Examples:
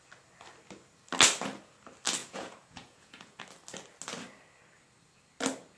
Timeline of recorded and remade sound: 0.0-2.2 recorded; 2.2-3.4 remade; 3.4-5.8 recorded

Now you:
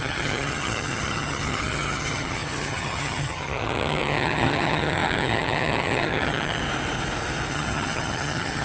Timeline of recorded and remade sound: 0.0-6.6 remade; 6.6-7.5 recorded; 7.5-8.6 remade

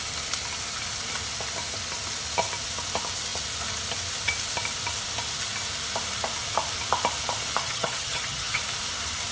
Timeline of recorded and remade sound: 0.0-7.6 recorded; 7.6-8.6 remade; 8.6-9.3 recorded

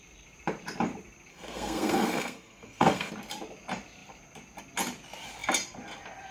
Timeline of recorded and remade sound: 0.0-1.3 recorded; 1.3-3.1 remade; 3.1-6.3 recorded

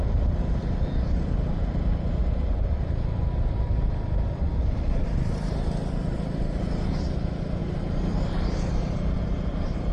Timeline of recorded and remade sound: 0.0-2.2 recorded; 2.2-2.8 remade; 2.8-7.6 recorded; 7.6-9.9 remade

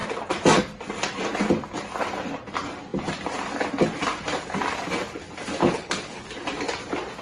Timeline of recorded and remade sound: 0.0-5.6 recorded; 5.6-6.2 remade; 6.2-7.2 recorded

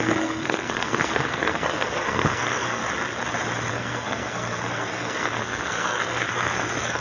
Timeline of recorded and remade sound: 0.0-2.8 remade; 2.8-3.7 recorded; 3.7-7.0 remade

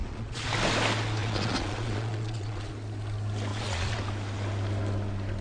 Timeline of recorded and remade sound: 0.0-0.5 remade; 0.5-1.2 recorded; 1.2-2.7 remade; 2.7-3.5 recorded; 3.5-4.0 remade; 4.0-5.4 recorded